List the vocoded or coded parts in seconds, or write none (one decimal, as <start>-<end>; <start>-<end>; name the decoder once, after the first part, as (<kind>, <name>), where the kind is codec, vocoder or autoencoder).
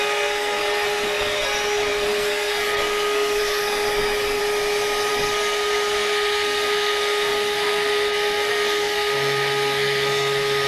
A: 0.0-4.4 (codec, SNAC); 5.1-10.7